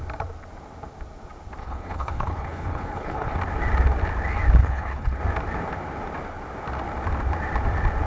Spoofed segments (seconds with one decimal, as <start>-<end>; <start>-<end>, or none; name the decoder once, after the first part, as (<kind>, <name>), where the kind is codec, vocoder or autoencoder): 1.6-3.3 (codec, HILCodec); 4.6-5.2